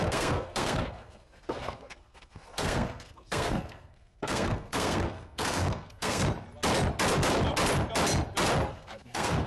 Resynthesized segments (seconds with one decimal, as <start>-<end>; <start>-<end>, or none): 0.0-6.2; 8.7-9.5